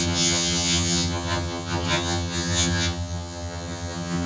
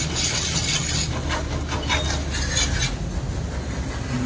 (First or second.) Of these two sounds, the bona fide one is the second